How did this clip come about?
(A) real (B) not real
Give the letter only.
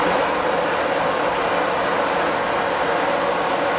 A